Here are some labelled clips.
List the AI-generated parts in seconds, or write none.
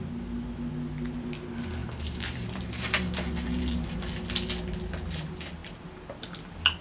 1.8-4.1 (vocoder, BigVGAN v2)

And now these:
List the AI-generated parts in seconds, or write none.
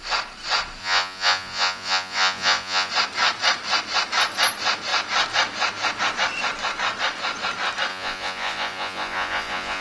0.8-2.9 (vocoder, Vocos); 7.9-9.8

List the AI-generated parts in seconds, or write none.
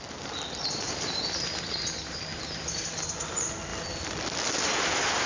none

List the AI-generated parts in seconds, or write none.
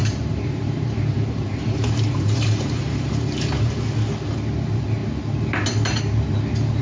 0.0-3.7 (vocoder, BigVGAN v2)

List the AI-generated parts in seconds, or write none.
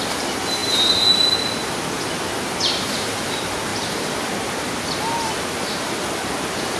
none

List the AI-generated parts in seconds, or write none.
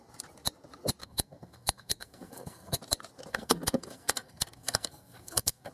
1.0-2.8 (codec, SNAC); 3.3-5.7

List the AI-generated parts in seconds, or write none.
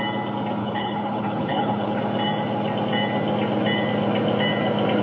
0.6-2.0 (codec, HILCodec)